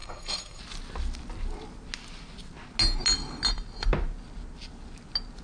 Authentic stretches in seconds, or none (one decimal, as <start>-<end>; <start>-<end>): 0.6-5.4